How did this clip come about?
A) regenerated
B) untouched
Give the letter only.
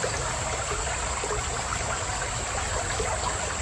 B